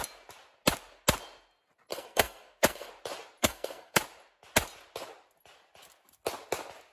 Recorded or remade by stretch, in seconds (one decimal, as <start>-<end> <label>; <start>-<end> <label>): 0.0-1.9 recorded; 1.9-2.9 remade; 2.9-3.4 recorded; 3.4-4.0 remade; 4.0-6.9 recorded